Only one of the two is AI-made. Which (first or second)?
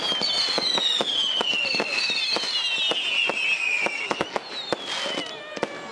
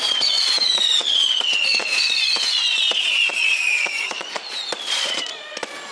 second